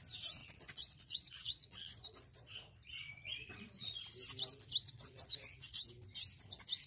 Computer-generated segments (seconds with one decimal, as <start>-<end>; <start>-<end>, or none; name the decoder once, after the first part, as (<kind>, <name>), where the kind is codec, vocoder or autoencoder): 0.4-4.0 (vocoder, Vocos); 4.8-5.8